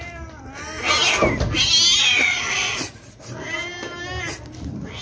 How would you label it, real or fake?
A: real